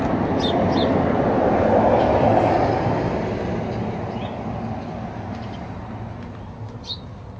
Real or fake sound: real